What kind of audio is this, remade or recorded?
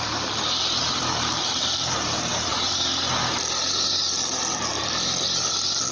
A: remade